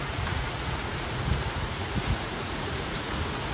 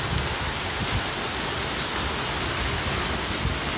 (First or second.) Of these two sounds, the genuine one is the second